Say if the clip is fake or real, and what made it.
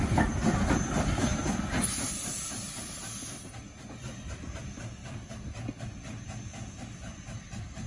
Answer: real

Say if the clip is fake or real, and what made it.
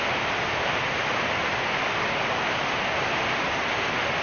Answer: real